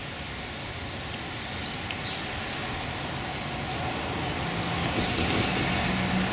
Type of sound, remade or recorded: recorded